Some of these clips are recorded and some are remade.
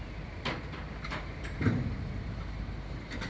remade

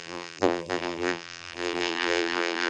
remade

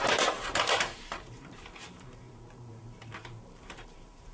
remade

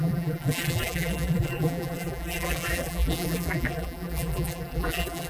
remade